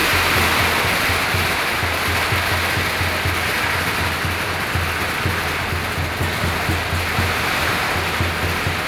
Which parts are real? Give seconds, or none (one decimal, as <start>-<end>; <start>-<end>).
0.0-8.9